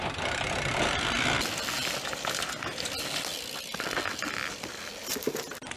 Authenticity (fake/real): real